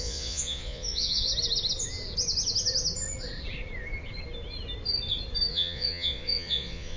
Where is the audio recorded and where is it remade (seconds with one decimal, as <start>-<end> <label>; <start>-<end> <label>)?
0.0-1.3 remade; 1.3-5.5 recorded; 5.5-7.0 remade